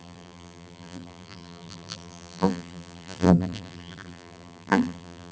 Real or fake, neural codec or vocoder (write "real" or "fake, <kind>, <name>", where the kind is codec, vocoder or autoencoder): fake, vocoder, BigVGAN v2